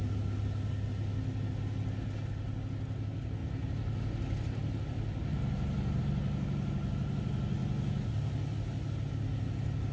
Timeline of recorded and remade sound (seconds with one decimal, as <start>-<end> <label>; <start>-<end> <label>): 0.0-9.9 recorded